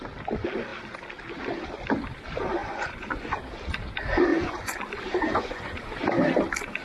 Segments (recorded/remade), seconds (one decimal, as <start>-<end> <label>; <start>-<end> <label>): 0.0-2.6 recorded; 2.6-3.4 remade; 3.4-4.3 recorded; 4.3-5.8 remade; 5.8-6.8 recorded